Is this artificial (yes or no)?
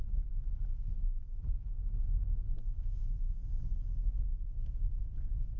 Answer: yes